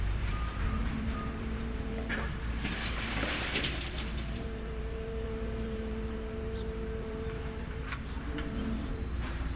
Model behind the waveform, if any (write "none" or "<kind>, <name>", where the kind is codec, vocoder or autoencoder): vocoder, BigVGAN v2